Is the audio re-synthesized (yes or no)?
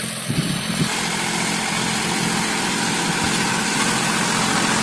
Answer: no